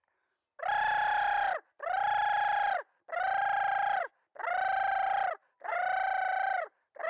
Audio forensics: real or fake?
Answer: real